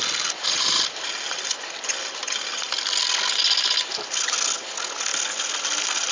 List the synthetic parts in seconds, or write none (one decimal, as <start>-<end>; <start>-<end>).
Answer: none